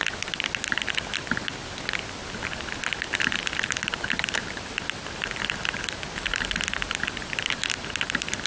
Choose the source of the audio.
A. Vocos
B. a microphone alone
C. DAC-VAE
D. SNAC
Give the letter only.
B